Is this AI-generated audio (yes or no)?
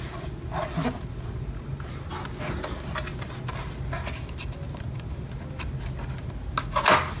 no